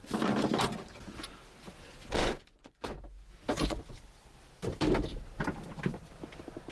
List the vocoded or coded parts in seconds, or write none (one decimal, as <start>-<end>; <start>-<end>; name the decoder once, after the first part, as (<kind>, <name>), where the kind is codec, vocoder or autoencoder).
2.2-3.0 (vocoder, Vocos); 3.5-4.0